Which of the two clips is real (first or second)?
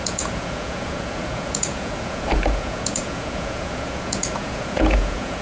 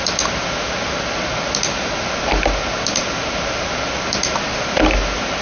second